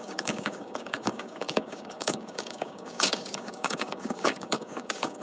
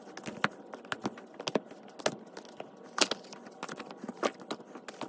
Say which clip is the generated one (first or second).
first